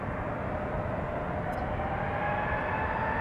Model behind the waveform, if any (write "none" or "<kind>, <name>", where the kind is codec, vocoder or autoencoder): none